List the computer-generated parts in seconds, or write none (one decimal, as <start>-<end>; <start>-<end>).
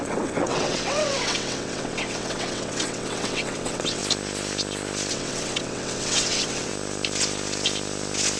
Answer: 0.0-4.0; 5.1-6.7